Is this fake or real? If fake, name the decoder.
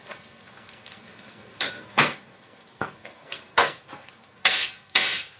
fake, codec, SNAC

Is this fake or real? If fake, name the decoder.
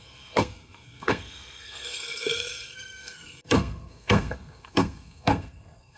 fake, codec, SNAC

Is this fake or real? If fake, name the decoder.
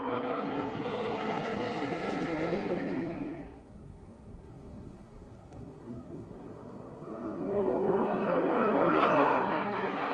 fake, codec, SNAC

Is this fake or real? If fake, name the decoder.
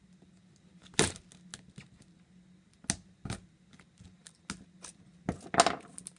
real